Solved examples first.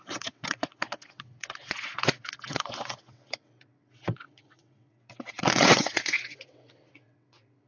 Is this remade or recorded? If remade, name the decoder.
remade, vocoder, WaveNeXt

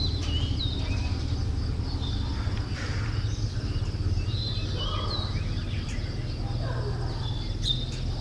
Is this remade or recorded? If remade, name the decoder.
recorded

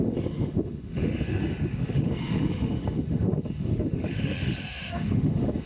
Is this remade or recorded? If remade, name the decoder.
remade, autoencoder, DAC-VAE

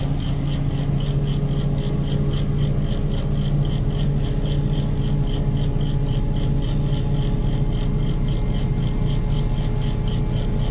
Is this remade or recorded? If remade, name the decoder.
recorded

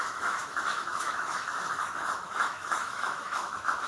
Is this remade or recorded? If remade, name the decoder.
remade, autoencoder, DAC-VAE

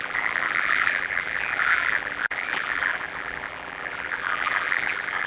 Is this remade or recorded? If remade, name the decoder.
remade, vocoder, BigVGAN v2